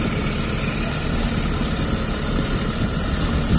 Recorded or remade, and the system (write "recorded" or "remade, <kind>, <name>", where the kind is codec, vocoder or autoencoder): recorded